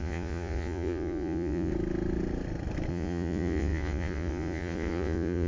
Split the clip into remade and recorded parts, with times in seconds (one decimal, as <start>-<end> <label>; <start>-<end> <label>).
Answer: 0.0-1.7 remade; 1.7-2.9 recorded; 2.9-5.5 remade